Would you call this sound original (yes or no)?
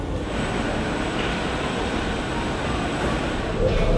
yes